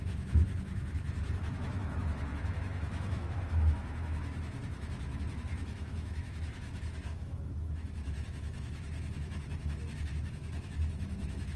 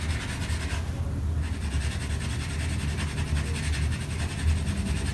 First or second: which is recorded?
second